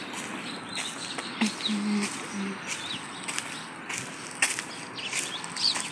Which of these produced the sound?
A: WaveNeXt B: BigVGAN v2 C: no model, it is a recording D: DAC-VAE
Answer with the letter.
C